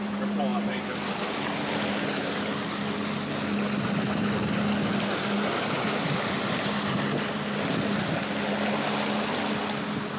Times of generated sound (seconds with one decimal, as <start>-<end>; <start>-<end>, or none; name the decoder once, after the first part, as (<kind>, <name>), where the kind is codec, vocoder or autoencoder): none